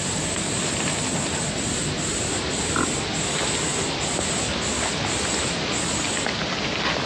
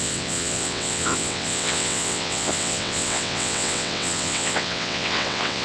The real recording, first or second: first